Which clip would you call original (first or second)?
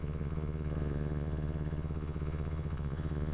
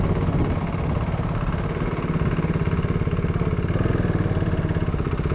second